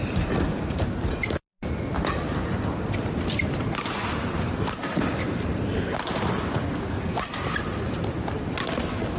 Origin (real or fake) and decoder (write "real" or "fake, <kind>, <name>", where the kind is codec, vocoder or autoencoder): real